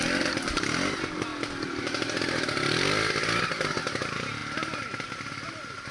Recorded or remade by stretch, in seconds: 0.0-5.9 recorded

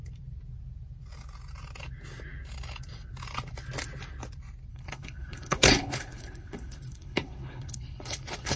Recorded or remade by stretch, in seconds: 0.0-4.7 recorded; 4.7-8.6 remade

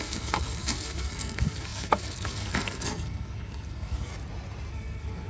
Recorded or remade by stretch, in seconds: 0.0-4.1 remade; 4.1-4.7 recorded; 4.7-5.3 remade

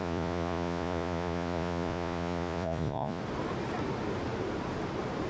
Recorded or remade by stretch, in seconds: 0.0-3.2 remade; 3.2-5.3 recorded

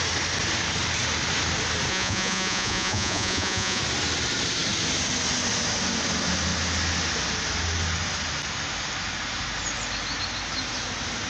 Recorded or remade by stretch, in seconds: 0.0-1.9 recorded; 1.9-3.8 remade; 3.8-11.3 recorded

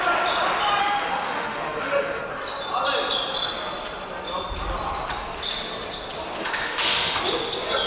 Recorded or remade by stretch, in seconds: 0.0-0.8 recorded; 0.8-2.2 remade; 2.2-6.4 recorded; 6.4-7.2 remade; 7.2-7.9 recorded

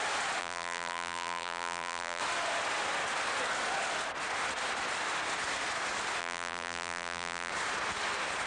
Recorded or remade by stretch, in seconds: 0.0-0.4 recorded; 0.4-2.2 remade; 2.2-6.2 recorded; 6.2-7.5 remade; 7.5-8.5 recorded

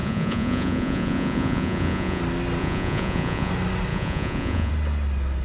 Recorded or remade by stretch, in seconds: 0.0-2.2 remade; 2.2-2.6 recorded; 2.6-3.5 remade; 3.5-3.9 recorded; 3.9-4.7 remade; 4.7-5.4 recorded